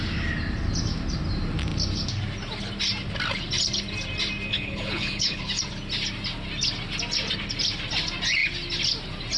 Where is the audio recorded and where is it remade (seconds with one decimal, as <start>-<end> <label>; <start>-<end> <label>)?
0.0-4.5 recorded; 4.5-5.6 remade; 5.6-9.4 recorded